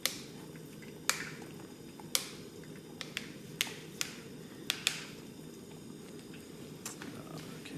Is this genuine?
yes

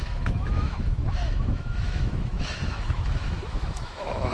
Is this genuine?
no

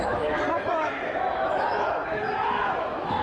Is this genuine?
no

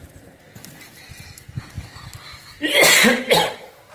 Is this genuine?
yes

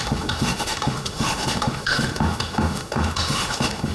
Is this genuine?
no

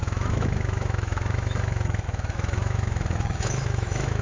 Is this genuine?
no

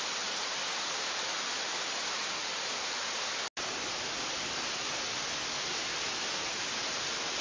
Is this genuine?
yes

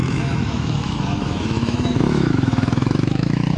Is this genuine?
no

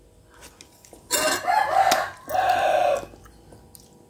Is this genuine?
yes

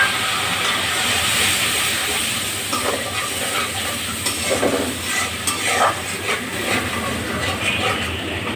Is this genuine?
yes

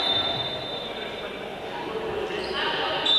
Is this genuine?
yes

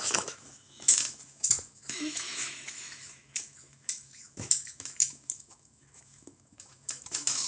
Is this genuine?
no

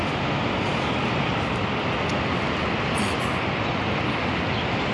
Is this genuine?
yes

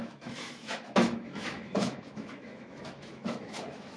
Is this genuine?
no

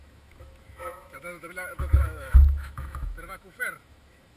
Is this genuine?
no